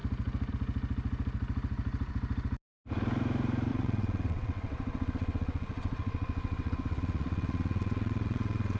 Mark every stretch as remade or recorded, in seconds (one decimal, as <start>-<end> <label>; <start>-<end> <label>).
0.0-3.7 recorded; 3.7-8.8 remade